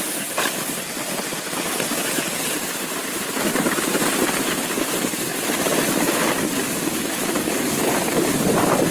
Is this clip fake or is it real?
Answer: real